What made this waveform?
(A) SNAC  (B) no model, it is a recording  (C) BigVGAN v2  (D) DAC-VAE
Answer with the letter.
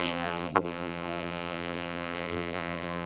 C